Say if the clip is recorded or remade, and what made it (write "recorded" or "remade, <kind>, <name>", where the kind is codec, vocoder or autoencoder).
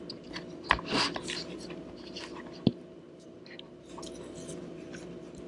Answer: recorded